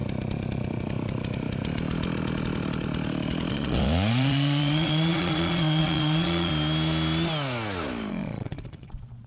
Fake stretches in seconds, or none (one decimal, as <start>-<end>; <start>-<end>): 3.5-6.5; 8.1-9.3